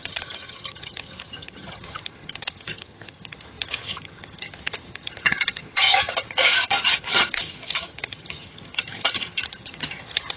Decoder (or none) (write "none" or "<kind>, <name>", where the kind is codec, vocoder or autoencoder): vocoder, HiFi-GAN